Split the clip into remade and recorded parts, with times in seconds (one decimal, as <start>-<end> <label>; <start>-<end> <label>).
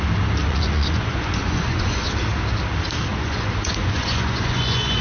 0.0-0.4 recorded; 0.4-2.1 remade; 2.1-3.1 recorded; 3.1-5.0 remade